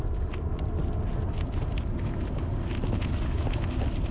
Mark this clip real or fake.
real